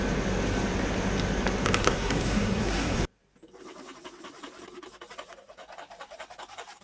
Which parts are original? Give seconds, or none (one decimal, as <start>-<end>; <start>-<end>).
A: 0.0-1.8; 3.0-6.8